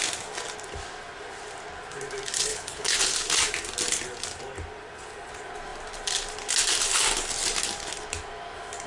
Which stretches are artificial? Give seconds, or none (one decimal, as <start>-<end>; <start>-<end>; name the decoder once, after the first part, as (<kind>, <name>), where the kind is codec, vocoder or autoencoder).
2.5-3.0 (codec, HILCodec)